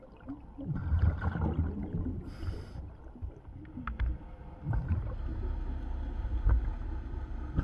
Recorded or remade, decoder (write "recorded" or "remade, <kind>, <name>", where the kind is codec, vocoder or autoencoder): recorded